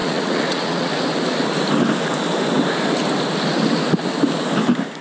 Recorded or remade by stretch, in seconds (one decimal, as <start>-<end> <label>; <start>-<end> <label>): 0.0-0.9 remade; 0.9-5.0 recorded